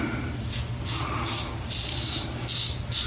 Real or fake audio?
real